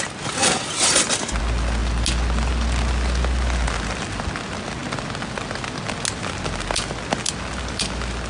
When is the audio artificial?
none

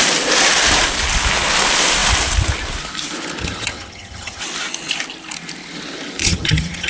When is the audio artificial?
3.4-4.4 (vocoder, HiFi-GAN); 6.2-6.9

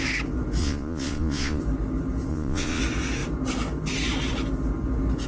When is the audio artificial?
0.6-1.6 (vocoder, Vocos); 2.3-2.8

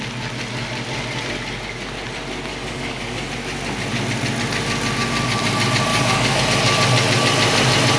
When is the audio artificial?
2.5-3.3 (codec, DAC); 5.9-6.4

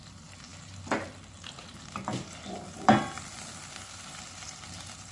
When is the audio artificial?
0.0-0.5 (vocoder, BigVGAN v2); 3.6-5.1

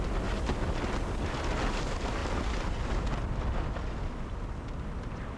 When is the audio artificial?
none

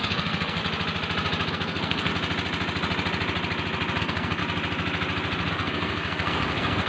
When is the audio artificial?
0.0-0.6 (codec, SNAC); 1.5-2.1; 4.0-4.4; 5.5-6.9

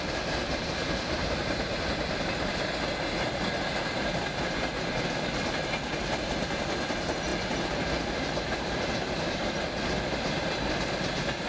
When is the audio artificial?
none